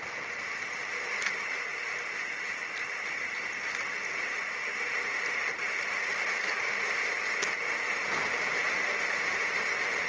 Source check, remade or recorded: recorded